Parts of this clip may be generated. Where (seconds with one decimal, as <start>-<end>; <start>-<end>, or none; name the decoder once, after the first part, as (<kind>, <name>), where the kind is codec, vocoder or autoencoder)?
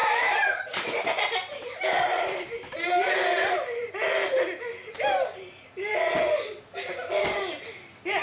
0.0-3.9 (vocoder, BigVGAN v2)